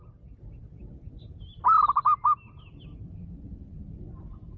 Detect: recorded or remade recorded